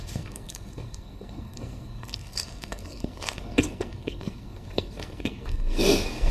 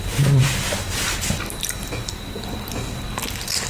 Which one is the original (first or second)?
second